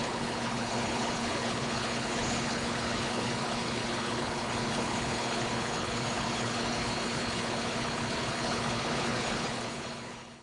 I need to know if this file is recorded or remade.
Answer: remade